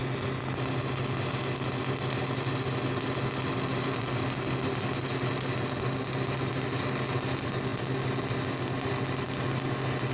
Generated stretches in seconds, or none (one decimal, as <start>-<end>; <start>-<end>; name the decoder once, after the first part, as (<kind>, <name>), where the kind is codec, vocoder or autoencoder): none